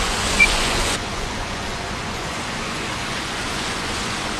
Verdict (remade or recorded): remade